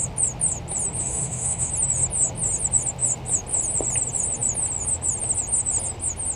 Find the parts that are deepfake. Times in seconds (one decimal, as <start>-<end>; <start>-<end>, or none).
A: 1.0-1.7